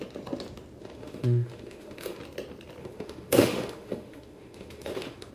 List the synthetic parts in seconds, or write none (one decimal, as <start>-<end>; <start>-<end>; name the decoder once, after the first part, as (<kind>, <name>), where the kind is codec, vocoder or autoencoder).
0.8-2.2 (autoencoder, DAC-VAE); 2.8-5.3